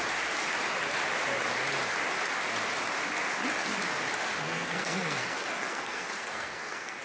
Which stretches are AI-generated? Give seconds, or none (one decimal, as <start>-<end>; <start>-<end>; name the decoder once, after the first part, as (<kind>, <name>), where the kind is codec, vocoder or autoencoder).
4.4-7.0 (codec, SNAC)